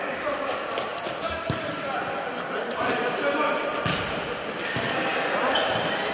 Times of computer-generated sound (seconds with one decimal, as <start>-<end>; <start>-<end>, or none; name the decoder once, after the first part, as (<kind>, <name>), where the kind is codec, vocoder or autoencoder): none